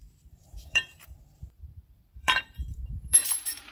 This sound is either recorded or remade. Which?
remade